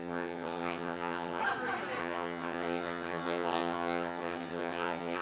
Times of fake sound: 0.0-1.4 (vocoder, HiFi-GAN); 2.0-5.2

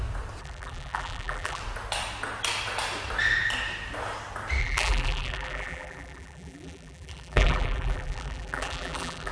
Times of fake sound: 0.4-1.6 (vocoder, BigVGAN v2); 4.6-9.3

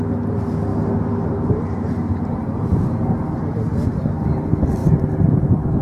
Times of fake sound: none

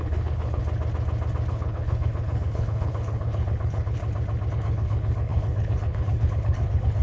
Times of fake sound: 0.0-0.6 (codec, HILCodec); 1.5-4.0; 4.5-7.0

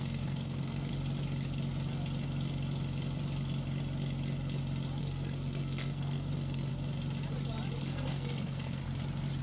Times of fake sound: 0.0-0.9 (codec, SNAC); 5.0-6.7; 7.8-8.8

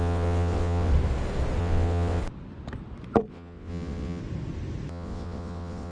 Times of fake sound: 0.0-0.9 (vocoder, WaveNeXt); 1.6-2.2; 3.3-4.2; 4.9-5.9

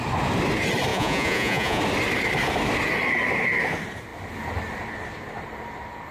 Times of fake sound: 0.9-1.8 (vocoder, Vocos)

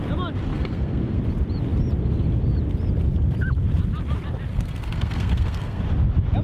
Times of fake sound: 0.5-1.2 (codec, SNAC); 4.5-5.8